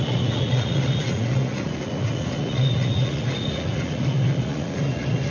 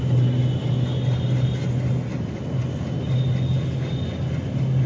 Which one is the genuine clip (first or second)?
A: second